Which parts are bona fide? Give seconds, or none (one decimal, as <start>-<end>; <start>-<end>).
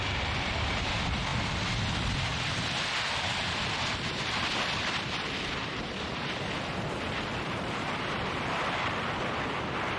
0.9-2.3; 4.4-5.6; 8.4-10.0